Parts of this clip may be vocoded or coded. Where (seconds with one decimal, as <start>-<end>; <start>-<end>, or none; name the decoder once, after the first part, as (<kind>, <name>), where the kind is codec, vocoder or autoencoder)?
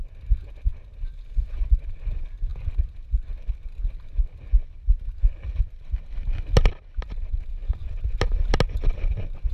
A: none